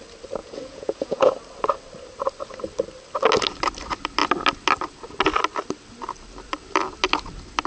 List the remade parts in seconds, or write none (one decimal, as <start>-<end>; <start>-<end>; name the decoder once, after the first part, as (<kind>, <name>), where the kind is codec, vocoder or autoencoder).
0.4-1.3 (vocoder, Vocos)